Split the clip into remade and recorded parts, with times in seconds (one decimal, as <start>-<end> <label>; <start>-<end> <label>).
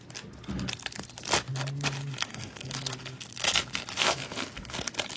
0.0-2.3 recorded; 2.3-2.9 remade; 2.9-4.0 recorded; 4.0-4.5 remade; 4.5-5.2 recorded